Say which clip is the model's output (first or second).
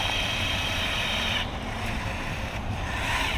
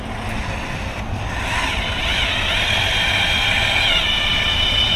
first